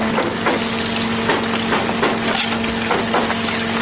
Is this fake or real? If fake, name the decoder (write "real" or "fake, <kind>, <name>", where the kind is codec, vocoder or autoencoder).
real